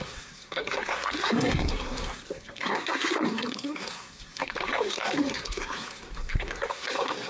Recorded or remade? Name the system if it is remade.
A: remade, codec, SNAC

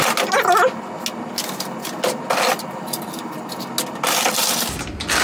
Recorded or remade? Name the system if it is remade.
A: recorded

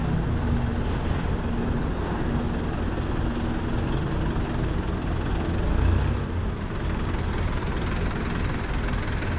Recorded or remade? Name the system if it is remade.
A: recorded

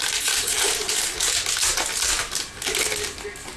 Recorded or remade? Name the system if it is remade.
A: recorded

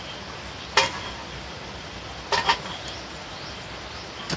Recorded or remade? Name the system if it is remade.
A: recorded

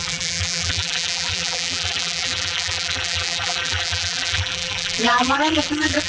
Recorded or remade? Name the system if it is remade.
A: remade, vocoder, BigVGAN v2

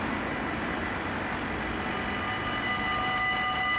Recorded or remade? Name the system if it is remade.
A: recorded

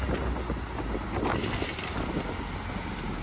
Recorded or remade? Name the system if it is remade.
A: recorded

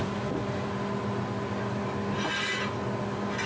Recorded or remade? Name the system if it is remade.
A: recorded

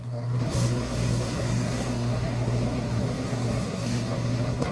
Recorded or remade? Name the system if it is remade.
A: remade, codec, SNAC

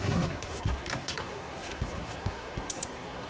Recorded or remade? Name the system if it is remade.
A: remade, codec, SNAC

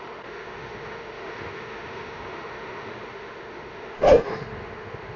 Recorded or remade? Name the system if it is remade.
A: remade, autoencoder, DAC-VAE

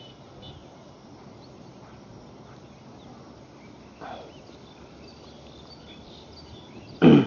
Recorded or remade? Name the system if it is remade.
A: recorded